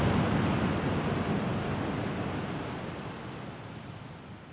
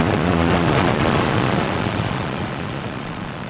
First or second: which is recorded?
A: first